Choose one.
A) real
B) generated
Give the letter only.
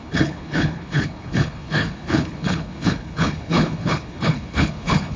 B